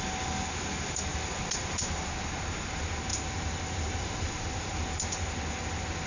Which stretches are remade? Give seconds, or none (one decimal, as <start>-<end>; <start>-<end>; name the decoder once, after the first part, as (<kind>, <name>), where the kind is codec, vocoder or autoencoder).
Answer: 3.1-4.8 (vocoder, BigVGAN v2)